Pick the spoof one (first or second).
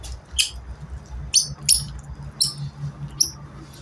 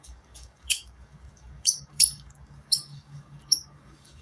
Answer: second